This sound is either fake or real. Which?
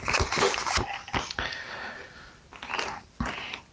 real